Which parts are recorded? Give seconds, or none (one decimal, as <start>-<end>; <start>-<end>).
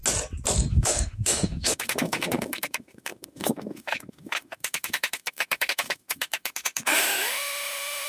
0.0-0.7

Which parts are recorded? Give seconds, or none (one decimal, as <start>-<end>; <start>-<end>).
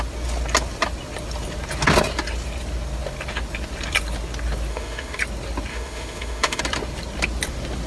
0.0-4.7; 5.2-5.7; 6.6-7.9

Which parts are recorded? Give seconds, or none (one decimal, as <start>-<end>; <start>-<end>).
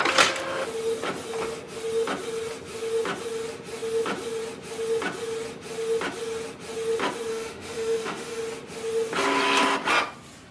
0.0-7.3; 8.4-10.5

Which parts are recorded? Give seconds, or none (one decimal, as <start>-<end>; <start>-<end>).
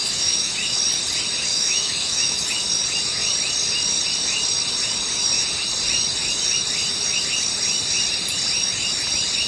0.8-1.5; 2.5-9.5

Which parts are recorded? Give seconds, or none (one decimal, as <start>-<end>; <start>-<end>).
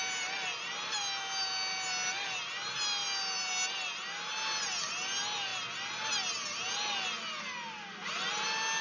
0.0-8.8